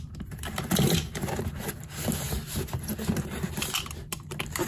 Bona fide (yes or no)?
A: yes